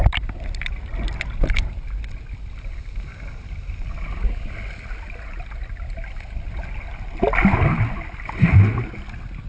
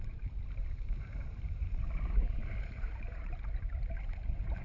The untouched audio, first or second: first